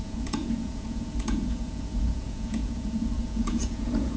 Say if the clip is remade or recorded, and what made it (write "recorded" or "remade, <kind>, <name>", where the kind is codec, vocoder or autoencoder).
remade, vocoder, Vocos